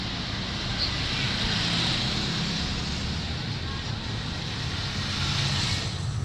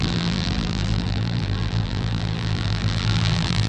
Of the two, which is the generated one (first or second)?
second